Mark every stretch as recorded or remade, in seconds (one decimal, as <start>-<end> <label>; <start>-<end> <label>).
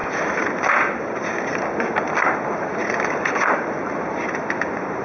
0.0-0.6 recorded; 0.6-5.0 remade